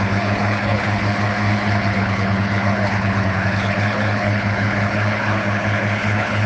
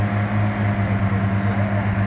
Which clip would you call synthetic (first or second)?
first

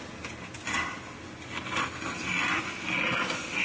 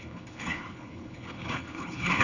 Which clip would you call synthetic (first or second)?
second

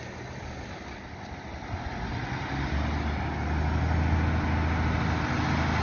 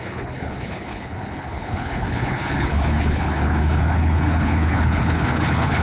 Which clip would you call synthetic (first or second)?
second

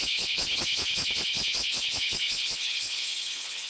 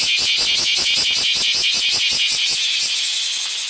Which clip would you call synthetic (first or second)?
first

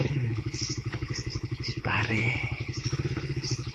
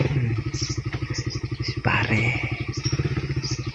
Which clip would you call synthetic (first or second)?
first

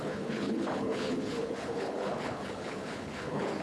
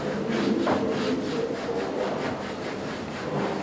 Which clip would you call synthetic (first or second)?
first